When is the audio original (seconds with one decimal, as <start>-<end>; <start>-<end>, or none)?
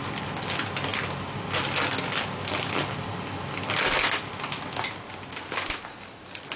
0.0-6.6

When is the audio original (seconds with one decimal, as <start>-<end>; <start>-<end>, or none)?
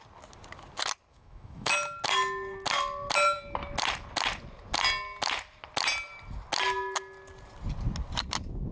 0.0-1.1; 1.7-8.7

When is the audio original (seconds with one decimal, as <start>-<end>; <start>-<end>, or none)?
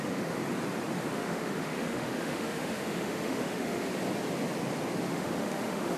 0.4-1.1; 3.9-5.1